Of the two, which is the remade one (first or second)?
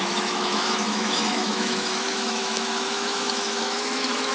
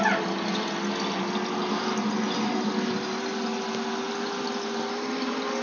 first